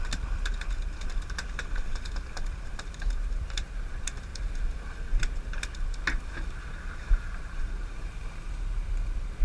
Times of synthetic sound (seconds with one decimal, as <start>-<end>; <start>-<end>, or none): 0.0-4.3; 6.5-9.4